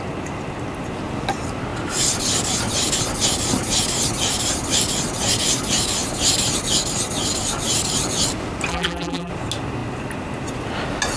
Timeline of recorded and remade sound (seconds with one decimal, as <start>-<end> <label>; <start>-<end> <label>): 0.0-8.7 recorded; 8.7-9.3 remade; 9.3-11.2 recorded